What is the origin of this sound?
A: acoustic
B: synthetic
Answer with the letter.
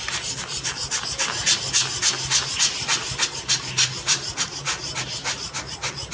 A